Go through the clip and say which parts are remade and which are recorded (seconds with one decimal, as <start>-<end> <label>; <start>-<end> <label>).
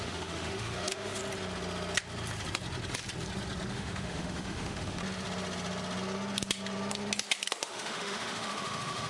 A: 0.0-1.2 remade; 1.2-3.7 recorded; 3.7-5.0 remade; 5.0-7.6 recorded; 7.6-9.1 remade